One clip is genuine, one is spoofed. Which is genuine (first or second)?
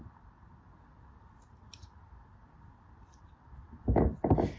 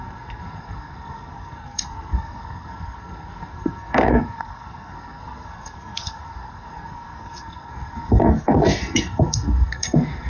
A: first